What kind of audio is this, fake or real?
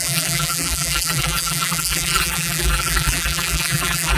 fake